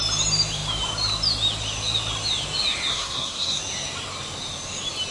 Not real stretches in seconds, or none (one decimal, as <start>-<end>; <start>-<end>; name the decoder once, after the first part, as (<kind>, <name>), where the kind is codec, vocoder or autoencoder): 2.9-3.6 (codec, SNAC)